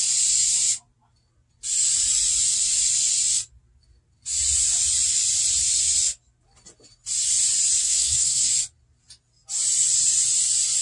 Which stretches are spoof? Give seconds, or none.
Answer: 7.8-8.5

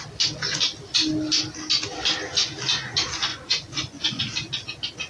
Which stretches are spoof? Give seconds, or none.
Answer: 3.3-4.2

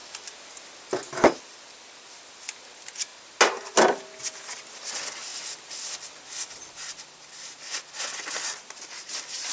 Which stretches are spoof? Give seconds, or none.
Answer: 0.0-1.4; 5.3-9.5

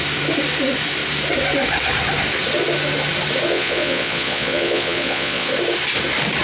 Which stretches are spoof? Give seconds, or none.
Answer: 3.5-5.5

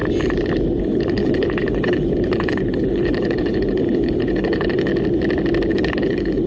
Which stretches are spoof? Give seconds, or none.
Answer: 0.8-4.9; 5.7-6.5

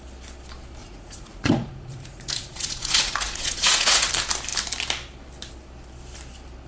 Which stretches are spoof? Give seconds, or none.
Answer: 0.8-4.1

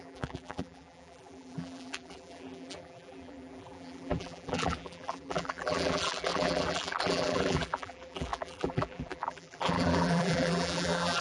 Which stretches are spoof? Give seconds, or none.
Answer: 0.0-11.2